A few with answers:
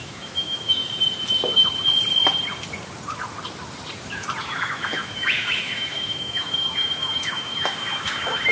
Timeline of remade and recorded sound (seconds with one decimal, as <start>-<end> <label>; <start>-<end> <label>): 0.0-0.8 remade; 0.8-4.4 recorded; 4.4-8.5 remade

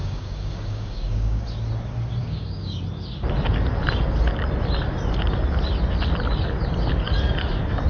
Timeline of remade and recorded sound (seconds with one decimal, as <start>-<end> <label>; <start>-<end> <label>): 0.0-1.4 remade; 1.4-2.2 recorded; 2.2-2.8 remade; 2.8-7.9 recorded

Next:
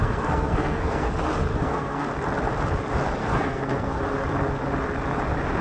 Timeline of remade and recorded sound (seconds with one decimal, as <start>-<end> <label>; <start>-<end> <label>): 0.0-1.1 remade; 1.1-1.5 recorded; 1.5-2.1 remade; 2.1-3.2 recorded; 3.2-4.0 remade; 4.0-5.6 recorded

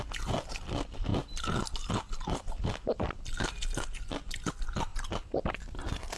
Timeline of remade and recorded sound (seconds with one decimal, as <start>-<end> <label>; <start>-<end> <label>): 0.0-6.2 recorded